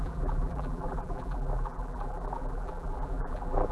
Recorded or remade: remade